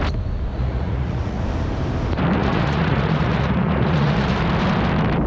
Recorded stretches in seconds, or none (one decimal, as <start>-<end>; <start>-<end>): 0.0-0.5; 1.4-2.4; 4.4-5.3